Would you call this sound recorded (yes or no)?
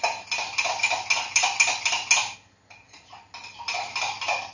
yes